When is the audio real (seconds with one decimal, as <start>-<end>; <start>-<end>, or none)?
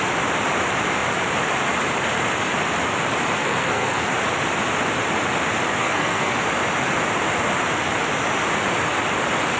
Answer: 0.0-3.4; 4.1-5.8; 6.4-9.6